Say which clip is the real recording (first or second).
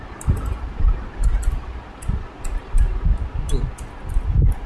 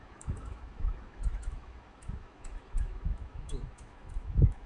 first